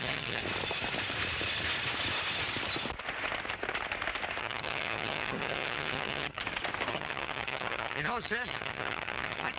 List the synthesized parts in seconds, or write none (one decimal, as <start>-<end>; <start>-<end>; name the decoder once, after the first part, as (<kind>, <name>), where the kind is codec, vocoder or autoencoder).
0.0-0.4 (vocoder, HiFi-GAN); 4.4-6.4; 6.9-9.6